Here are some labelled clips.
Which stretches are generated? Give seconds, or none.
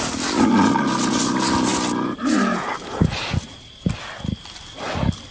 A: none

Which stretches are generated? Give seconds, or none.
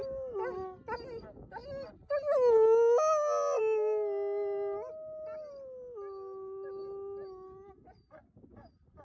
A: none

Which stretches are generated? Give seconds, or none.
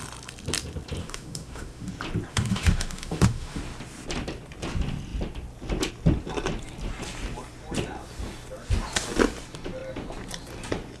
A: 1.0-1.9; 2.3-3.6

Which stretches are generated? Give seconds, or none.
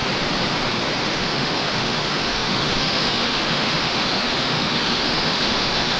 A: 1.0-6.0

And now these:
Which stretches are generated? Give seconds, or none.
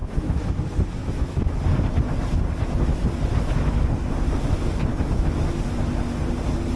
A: 0.0-0.5; 1.0-1.6; 4.9-5.5